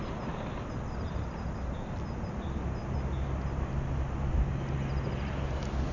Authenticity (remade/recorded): recorded